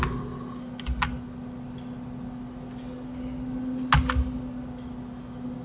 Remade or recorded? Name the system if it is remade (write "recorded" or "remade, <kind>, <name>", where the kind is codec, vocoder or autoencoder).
recorded